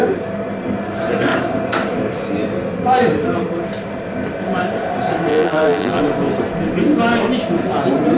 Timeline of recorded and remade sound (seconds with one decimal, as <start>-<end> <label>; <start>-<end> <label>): 0.0-5.3 recorded; 5.3-6.0 remade; 6.0-8.2 recorded